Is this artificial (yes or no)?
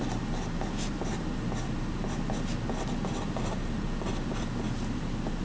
no